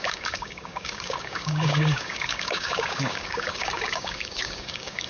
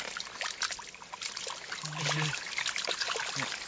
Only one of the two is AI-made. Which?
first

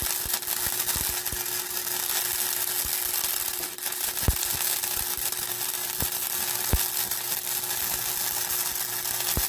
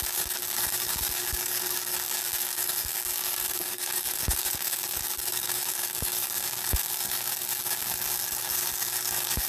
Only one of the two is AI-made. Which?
second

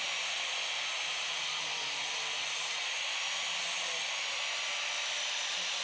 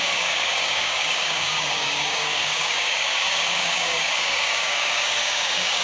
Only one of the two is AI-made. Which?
second